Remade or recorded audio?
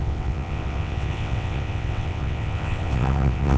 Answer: remade